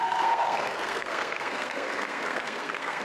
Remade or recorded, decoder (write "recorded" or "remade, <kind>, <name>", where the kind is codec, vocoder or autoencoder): remade, codec, SNAC